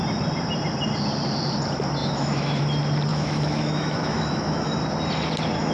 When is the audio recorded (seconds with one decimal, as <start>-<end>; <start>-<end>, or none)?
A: 0.0-2.0; 2.6-3.1; 4.7-5.7